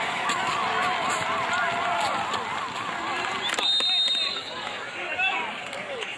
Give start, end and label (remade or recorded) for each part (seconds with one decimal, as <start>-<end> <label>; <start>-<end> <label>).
0.0-0.6 remade; 0.6-4.3 recorded; 4.3-6.2 remade